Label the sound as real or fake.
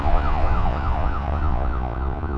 fake